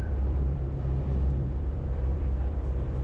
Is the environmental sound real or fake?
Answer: fake